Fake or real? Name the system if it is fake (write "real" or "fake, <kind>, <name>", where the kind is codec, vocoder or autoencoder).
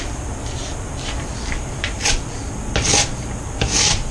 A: fake, vocoder, BigVGAN v2